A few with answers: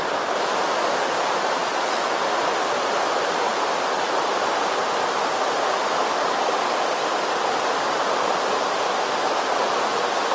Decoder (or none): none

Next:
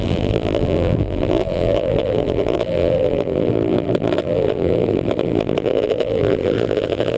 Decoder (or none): vocoder, BigVGAN v2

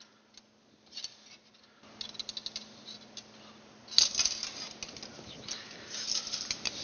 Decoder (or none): none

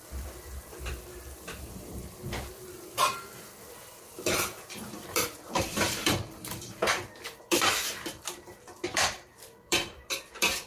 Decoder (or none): vocoder, BigVGAN v2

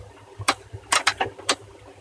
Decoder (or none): vocoder, BigVGAN v2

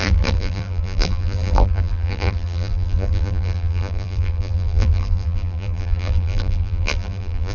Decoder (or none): vocoder, BigVGAN v2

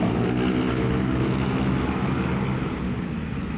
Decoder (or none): none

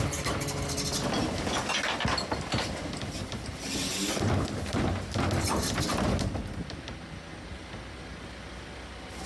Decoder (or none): none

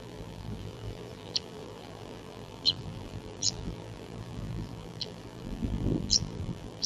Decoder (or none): vocoder, BigVGAN v2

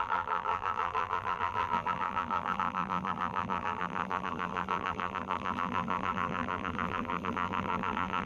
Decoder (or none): vocoder, BigVGAN v2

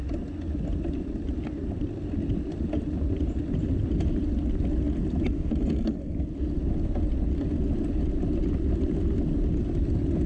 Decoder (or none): none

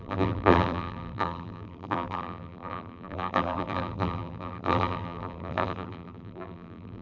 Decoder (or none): vocoder, BigVGAN v2